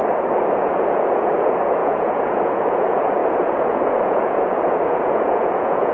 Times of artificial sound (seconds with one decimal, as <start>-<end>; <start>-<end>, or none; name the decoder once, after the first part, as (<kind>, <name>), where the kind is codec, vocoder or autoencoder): 0.6-5.9 (vocoder, Vocos)